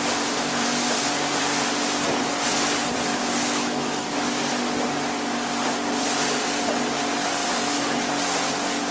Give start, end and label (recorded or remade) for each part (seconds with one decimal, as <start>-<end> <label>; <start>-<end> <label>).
0.0-3.1 recorded; 3.1-4.4 remade; 4.4-7.4 recorded; 7.4-8.1 remade; 8.1-8.9 recorded